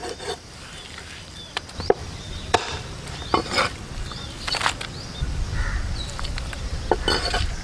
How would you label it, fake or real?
fake